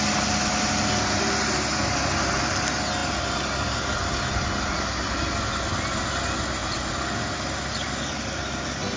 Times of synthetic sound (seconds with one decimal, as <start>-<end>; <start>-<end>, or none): none